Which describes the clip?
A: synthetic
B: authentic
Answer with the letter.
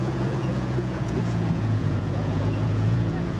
A